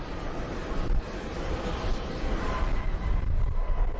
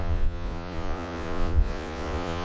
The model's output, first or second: second